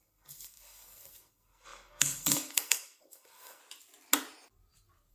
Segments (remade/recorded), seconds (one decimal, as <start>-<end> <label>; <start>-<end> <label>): 0.0-3.6 remade; 3.6-5.1 recorded